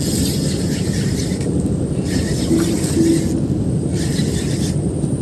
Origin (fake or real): real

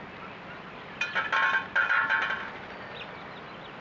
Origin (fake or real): real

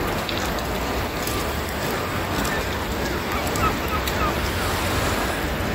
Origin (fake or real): real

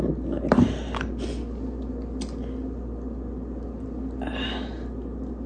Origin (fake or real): real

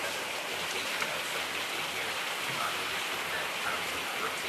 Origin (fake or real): fake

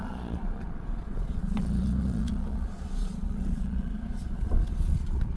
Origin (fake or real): fake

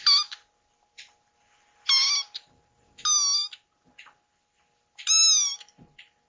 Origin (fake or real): real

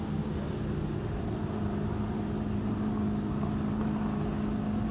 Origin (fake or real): real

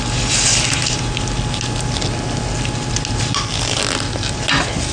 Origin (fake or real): real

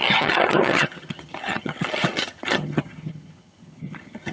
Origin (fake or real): fake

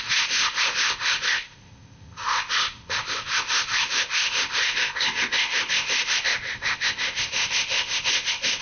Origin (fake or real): fake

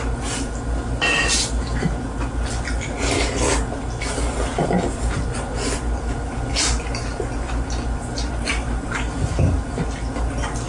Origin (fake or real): real